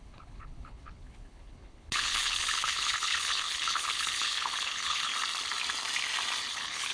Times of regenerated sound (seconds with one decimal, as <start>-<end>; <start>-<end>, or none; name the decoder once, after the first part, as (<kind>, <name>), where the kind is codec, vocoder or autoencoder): 0.0-5.1 (codec, HILCodec); 6.5-6.9